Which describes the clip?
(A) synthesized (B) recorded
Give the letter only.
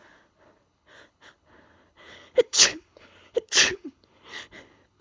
A